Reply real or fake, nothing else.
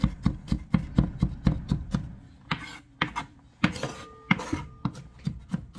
real